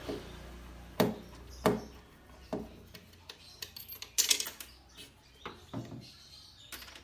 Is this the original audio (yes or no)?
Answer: yes